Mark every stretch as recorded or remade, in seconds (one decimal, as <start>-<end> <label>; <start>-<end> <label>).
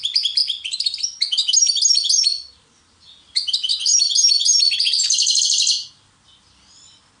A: 0.0-3.7 recorded; 3.7-5.4 remade; 5.4-7.2 recorded